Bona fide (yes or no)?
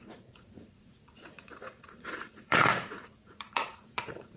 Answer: no